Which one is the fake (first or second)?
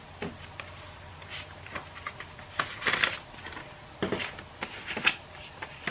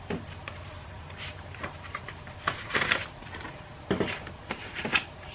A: second